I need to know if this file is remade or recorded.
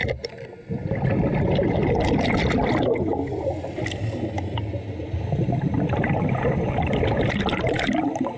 recorded